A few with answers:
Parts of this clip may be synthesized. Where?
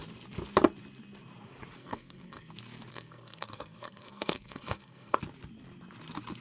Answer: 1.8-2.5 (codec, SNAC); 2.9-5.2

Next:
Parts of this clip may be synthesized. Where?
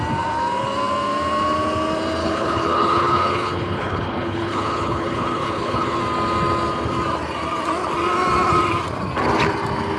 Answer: 2.2-6.0 (codec, HILCodec)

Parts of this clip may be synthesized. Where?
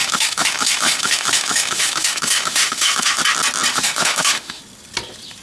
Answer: 0.0-3.2 (autoencoder, DAC-VAE); 3.7-4.6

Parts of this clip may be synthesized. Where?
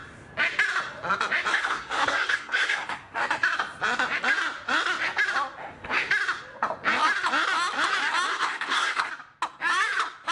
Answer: 1.5-3.2 (codec, SNAC); 5.6-6.1; 8.3-9.1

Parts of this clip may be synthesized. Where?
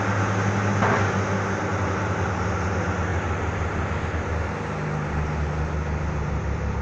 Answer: none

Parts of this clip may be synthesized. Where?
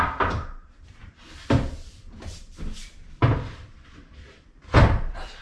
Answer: 0.0-5.4 (vocoder, BigVGAN v2)